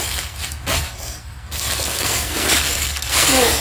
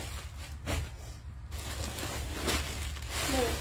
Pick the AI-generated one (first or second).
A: first